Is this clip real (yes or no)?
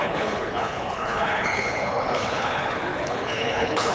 no